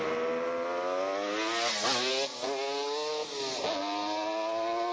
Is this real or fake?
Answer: real